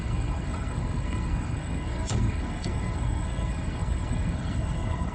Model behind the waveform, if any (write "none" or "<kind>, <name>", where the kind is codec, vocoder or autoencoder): codec, SNAC